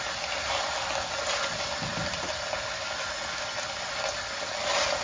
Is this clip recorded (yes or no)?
yes